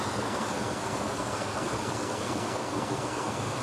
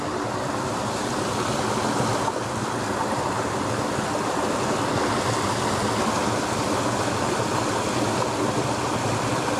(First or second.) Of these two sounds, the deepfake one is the first